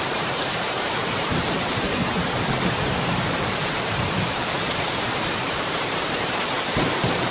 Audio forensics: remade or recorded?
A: remade